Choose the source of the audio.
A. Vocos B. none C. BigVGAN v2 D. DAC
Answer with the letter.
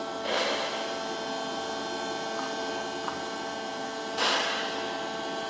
B